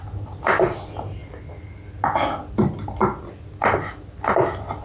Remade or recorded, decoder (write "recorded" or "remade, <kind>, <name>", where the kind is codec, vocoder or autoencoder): recorded